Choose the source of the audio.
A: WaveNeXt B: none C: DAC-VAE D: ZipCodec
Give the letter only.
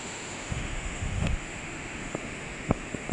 C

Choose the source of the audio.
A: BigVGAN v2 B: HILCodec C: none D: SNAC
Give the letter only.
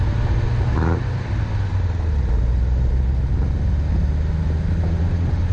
C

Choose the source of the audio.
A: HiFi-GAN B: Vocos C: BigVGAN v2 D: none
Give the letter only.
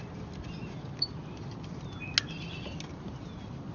D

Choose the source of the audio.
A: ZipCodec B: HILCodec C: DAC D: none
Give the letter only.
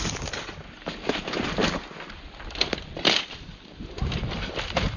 D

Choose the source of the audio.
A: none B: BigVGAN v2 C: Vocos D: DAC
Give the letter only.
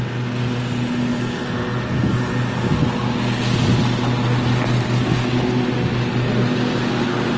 A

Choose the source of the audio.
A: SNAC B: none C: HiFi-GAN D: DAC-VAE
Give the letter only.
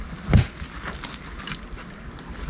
B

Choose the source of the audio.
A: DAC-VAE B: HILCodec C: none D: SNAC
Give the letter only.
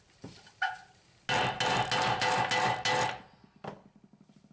C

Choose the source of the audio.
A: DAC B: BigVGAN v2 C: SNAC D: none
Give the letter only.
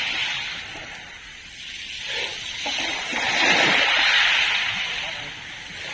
D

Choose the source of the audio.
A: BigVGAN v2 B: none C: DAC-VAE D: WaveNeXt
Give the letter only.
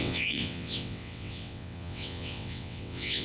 D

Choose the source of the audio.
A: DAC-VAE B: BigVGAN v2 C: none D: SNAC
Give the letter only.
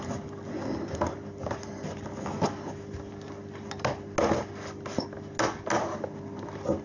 C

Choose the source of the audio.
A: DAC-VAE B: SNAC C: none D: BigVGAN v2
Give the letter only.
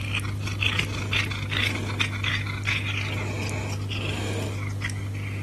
C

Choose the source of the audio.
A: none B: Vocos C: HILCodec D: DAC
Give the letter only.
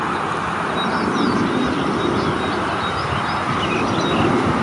A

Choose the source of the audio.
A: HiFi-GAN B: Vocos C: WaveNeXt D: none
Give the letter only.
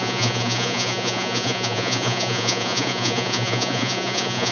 B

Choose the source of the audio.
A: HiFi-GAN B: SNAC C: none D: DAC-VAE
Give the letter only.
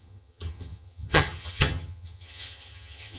A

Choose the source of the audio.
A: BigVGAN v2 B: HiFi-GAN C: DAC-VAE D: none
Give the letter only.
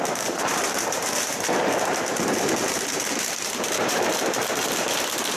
A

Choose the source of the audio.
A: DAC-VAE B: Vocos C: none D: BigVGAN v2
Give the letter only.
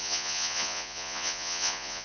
B